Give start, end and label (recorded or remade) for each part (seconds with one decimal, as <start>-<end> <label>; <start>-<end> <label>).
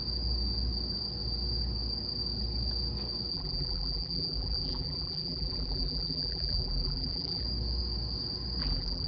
0.0-3.3 recorded; 3.3-7.4 remade; 7.4-8.6 recorded; 8.6-9.1 remade